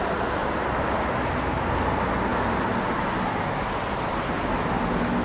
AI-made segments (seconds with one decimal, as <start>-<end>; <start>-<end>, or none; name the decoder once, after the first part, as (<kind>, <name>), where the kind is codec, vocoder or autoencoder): none